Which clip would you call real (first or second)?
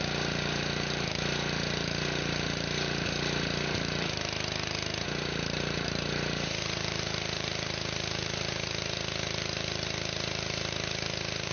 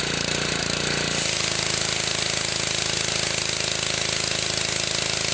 second